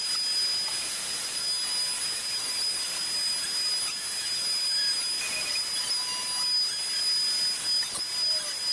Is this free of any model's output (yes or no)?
yes